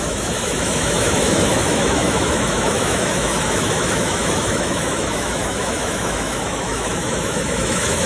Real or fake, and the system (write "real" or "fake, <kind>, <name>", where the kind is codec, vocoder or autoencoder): fake, autoencoder, DAC-VAE